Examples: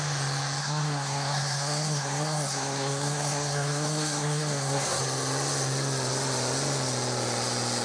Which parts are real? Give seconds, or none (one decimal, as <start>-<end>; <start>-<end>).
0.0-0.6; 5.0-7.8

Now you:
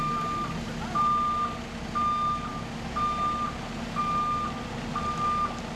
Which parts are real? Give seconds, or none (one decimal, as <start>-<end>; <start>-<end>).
0.0-5.8

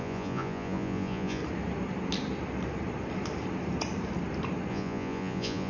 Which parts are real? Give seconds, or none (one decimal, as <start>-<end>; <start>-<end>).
1.4-4.7

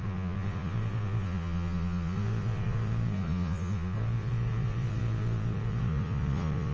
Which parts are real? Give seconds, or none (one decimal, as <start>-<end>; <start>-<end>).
none